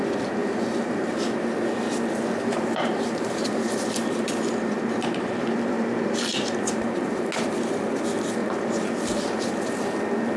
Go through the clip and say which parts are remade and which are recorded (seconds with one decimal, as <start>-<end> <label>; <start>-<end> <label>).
0.0-0.4 recorded; 0.4-1.3 remade; 1.3-2.5 recorded; 2.5-7.3 remade; 7.3-8.4 recorded; 8.4-9.5 remade; 9.5-10.4 recorded